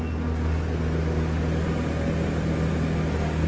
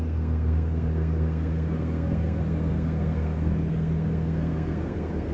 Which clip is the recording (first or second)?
first